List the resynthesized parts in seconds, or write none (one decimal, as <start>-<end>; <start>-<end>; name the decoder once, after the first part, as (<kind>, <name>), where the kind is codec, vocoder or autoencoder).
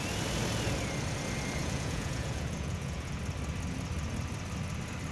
1.6-3.2 (vocoder, Vocos)